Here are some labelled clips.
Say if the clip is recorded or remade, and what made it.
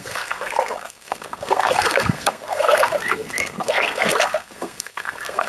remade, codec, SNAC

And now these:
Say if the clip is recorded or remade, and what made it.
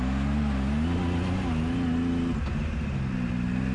recorded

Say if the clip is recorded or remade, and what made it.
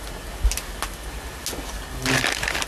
recorded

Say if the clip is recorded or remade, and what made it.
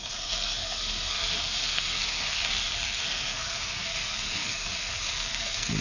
remade, codec, SNAC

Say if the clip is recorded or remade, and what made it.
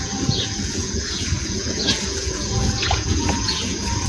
remade, vocoder, Vocos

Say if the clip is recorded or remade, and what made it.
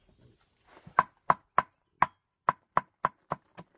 recorded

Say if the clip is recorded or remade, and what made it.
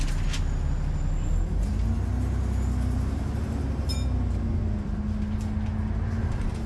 recorded